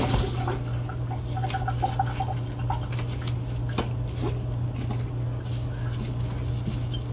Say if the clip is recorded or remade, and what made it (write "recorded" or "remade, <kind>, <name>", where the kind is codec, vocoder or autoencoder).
recorded